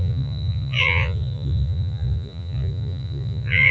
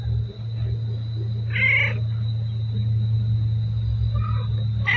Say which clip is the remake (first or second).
first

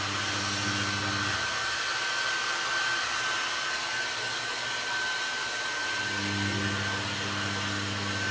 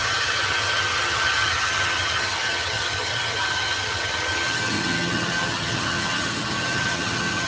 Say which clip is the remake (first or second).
second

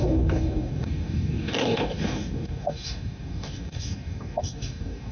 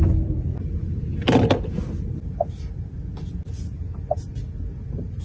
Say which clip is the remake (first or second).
first